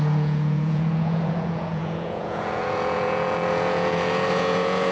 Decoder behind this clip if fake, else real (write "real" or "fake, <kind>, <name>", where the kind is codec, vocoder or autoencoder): fake, vocoder, Vocos